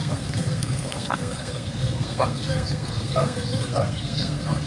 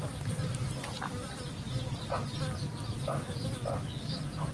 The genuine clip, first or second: second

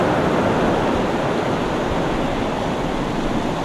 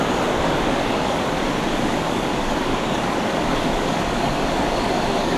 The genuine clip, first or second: first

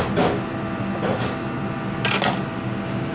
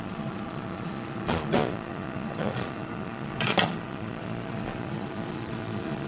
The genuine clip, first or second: first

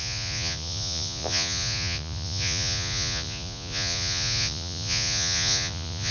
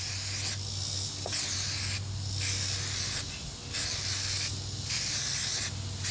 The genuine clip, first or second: second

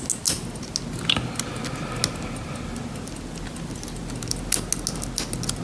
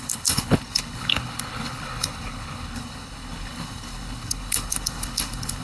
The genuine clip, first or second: first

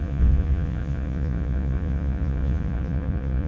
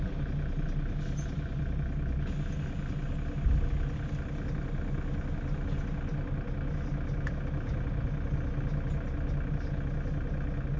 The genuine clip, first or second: second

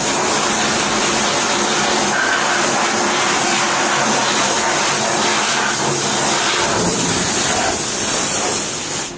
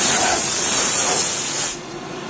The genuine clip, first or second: first